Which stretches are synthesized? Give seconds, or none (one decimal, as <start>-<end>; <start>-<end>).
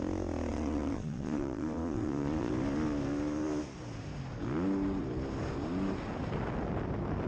0.5-2.5